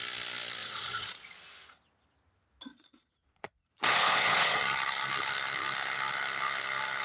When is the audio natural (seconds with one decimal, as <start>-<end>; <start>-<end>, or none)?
0.0-0.6; 1.4-2.7; 4.6-7.0